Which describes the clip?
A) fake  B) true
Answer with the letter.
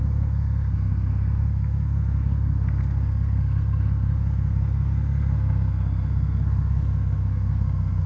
A